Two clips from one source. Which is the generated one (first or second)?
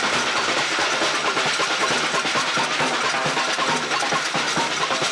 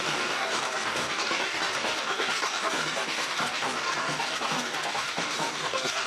second